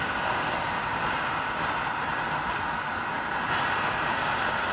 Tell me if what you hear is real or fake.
real